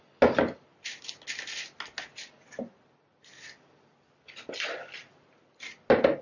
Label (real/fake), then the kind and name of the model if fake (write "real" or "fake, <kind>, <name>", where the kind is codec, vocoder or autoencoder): real